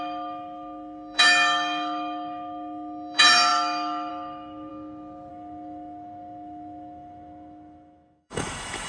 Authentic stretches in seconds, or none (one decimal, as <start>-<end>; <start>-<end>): 4.7-5.3

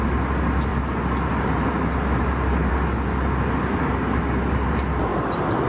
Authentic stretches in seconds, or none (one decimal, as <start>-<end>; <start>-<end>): 0.0-5.7